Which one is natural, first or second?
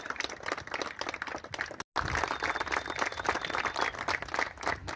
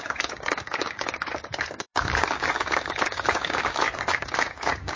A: first